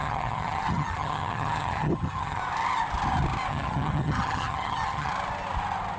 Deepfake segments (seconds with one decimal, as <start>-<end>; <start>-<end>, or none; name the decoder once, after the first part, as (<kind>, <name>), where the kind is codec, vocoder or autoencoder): 0.0-2.4 (vocoder, HiFi-GAN); 3.5-5.1